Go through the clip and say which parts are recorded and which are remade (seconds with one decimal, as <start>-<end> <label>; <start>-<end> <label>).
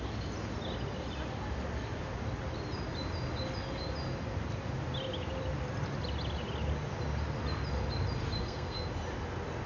0.0-8.4 recorded; 8.4-8.9 remade; 8.9-9.7 recorded